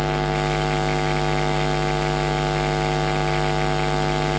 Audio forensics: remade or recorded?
recorded